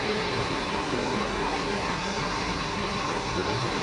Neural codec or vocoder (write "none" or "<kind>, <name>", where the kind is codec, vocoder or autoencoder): codec, SNAC